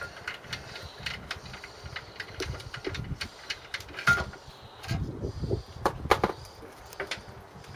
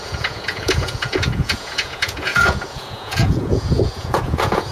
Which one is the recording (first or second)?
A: first